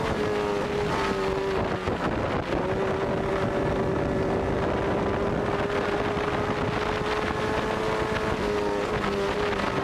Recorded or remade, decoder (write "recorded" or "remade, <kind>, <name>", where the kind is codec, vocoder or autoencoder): recorded